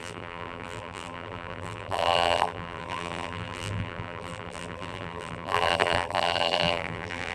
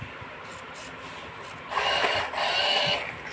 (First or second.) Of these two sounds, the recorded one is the second